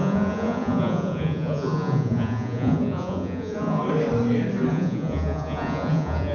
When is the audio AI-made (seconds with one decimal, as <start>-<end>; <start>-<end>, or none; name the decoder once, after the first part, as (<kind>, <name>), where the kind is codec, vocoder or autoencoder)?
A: 0.0-3.8 (vocoder, Vocos); 4.7-6.3